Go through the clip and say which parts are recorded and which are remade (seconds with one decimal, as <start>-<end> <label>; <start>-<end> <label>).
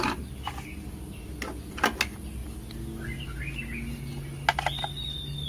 0.0-5.5 recorded